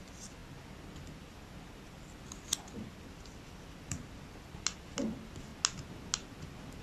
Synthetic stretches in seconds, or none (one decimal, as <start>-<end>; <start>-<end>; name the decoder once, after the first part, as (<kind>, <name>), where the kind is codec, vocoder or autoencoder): none